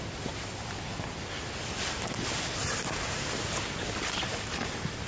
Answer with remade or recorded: recorded